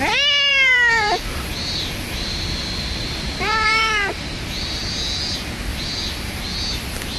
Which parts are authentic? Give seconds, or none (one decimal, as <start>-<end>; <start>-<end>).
0.0-0.5; 4.8-5.7; 6.4-7.2